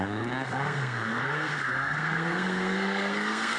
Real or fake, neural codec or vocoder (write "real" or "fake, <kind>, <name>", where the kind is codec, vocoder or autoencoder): fake, codec, SNAC